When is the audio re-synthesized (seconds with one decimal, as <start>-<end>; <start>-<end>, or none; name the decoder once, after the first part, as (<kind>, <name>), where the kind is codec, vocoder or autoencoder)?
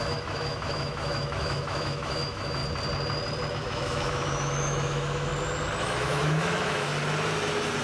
0.0-2.6 (autoencoder, DAC-VAE); 3.5-5.3; 5.8-6.9